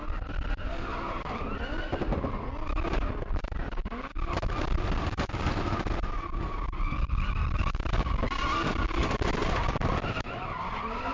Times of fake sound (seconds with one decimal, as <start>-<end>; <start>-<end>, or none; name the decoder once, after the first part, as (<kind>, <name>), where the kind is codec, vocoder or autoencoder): none